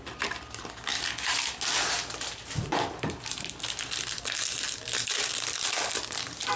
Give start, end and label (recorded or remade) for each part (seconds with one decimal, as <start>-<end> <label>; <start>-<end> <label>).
0.0-6.6 recorded